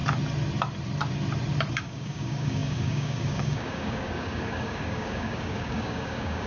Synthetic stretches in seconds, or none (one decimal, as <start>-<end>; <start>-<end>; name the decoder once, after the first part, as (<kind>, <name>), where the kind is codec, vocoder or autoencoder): 1.7-6.5 (codec, DAC)